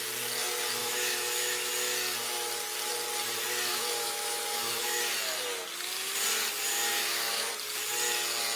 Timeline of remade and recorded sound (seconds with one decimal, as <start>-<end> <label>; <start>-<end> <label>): 0.0-0.8 recorded; 0.8-1.7 remade; 1.7-3.7 recorded; 3.7-5.0 remade; 5.0-6.9 recorded; 6.9-7.5 remade; 7.5-8.6 recorded